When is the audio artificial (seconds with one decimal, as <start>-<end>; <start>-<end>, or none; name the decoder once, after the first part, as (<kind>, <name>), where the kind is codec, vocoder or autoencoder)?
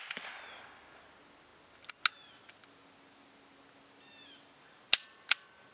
none